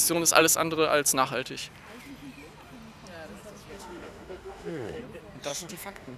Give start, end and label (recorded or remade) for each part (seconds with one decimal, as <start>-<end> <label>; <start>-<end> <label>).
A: 0.0-3.7 recorded; 3.7-5.0 remade; 5.0-5.5 recorded; 5.5-6.2 remade